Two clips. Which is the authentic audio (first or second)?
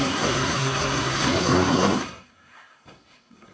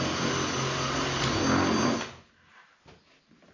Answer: second